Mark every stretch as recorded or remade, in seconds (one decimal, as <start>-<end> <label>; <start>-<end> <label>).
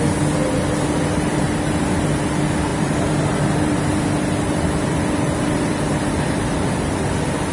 0.0-2.7 recorded; 2.7-7.5 remade